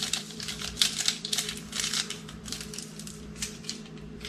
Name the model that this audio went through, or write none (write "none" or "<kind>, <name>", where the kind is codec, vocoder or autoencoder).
vocoder, BigVGAN v2